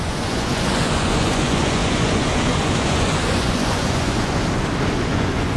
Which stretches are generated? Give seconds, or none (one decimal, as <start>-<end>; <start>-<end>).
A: 0.0-4.4; 4.9-5.6